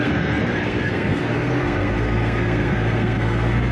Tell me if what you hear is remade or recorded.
remade